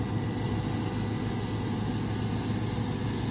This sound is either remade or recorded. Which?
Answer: recorded